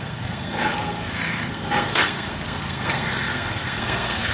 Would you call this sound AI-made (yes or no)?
yes